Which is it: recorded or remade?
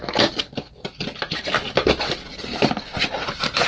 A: recorded